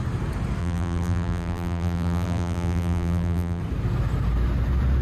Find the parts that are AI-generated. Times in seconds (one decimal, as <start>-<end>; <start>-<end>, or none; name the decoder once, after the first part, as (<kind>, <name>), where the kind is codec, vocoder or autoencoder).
0.6-3.6 (vocoder, BigVGAN v2)